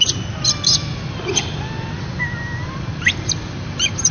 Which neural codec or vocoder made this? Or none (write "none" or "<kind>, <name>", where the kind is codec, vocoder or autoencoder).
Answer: none